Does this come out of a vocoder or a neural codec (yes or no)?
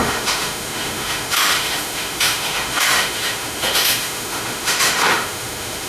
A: yes